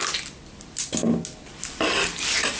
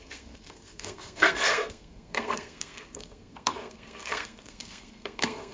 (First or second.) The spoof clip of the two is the second